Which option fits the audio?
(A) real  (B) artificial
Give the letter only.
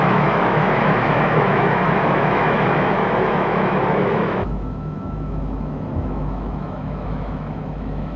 B